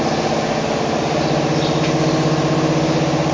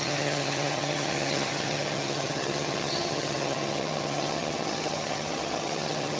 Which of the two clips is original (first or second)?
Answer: first